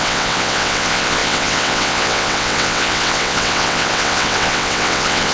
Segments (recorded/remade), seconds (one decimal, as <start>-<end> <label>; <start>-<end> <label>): 0.0-5.3 remade